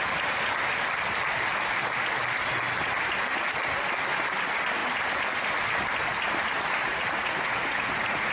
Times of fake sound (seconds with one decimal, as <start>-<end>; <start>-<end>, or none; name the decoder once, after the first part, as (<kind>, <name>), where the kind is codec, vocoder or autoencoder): 6.8-8.3 (vocoder, Vocos)